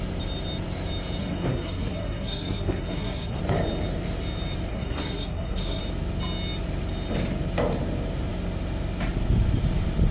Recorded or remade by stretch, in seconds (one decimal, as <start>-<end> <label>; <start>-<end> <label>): 0.0-1.2 recorded; 1.2-3.4 remade; 3.4-4.7 recorded; 4.7-5.8 remade; 5.8-10.1 recorded